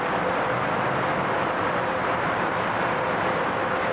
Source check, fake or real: real